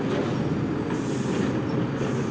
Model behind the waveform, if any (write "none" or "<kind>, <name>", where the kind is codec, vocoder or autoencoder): none